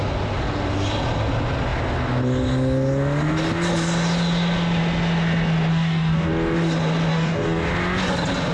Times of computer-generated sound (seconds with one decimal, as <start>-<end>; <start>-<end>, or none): 5.7-6.3; 7.1-7.7